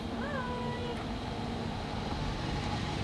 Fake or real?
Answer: real